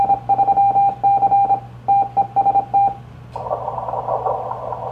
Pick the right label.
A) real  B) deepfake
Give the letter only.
A